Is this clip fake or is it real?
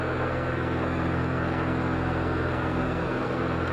fake